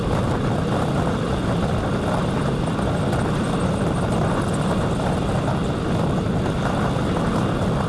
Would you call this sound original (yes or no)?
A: yes